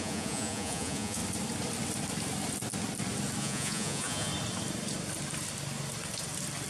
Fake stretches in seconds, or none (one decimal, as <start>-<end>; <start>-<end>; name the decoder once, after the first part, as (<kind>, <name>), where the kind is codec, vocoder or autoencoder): 0.0-1.2 (vocoder, Vocos); 3.4-4.3

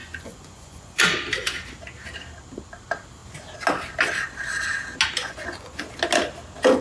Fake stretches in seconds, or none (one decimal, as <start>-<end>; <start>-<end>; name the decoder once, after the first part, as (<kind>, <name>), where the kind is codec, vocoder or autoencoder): 0.0-1.0 (vocoder, Vocos); 5.2-5.8

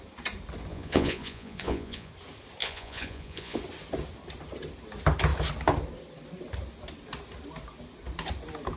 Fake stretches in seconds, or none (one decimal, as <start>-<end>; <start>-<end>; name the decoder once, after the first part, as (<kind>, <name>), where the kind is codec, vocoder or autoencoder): 0.7-2.1 (vocoder, Vocos); 2.6-3.6

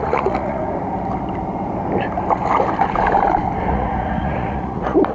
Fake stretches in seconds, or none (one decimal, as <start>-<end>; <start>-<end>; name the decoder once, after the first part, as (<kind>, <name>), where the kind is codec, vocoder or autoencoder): 0.0-0.6 (vocoder, Vocos); 3.7-5.1

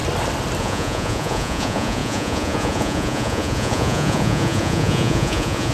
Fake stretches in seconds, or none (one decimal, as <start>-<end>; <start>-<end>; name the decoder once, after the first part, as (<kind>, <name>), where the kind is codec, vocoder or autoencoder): 0.6-5.7 (vocoder, Vocos)